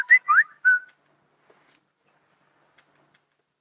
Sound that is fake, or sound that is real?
real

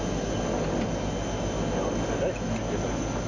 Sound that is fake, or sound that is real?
real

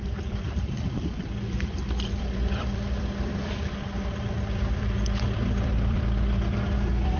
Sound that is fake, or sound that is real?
fake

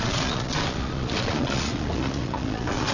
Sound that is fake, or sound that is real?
fake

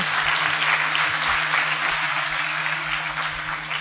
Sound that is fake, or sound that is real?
real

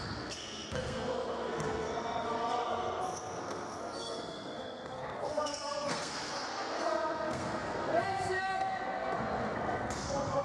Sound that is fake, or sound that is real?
fake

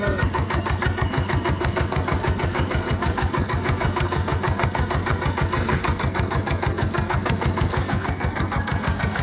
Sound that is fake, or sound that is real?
fake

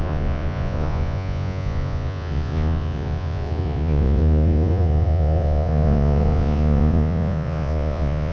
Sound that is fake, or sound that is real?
fake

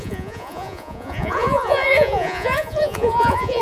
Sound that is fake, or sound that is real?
fake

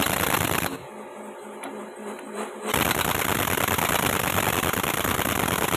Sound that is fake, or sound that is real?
real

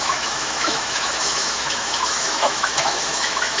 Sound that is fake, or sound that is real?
fake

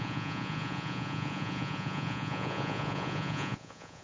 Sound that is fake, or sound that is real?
fake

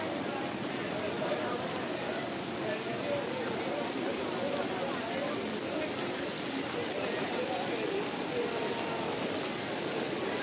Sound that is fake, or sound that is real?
real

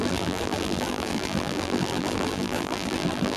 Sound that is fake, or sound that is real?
fake